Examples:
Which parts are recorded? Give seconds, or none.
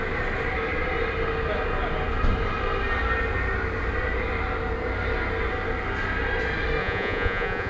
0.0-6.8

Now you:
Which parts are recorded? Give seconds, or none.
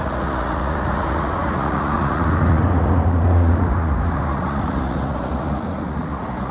none